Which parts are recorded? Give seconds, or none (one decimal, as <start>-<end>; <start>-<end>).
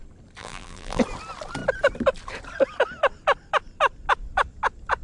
0.0-0.4; 1.0-5.0